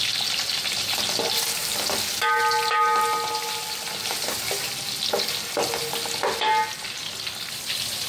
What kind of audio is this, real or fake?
real